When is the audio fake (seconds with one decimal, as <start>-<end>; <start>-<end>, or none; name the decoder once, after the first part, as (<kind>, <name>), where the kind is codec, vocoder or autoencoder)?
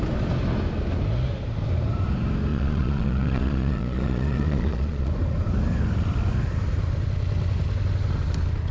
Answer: 2.5-5.1 (vocoder, Vocos)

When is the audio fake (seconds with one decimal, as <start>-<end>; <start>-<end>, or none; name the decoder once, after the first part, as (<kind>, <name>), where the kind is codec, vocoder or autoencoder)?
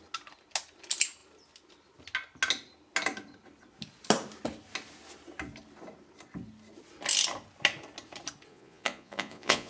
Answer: 8.5-9.7 (vocoder, Vocos)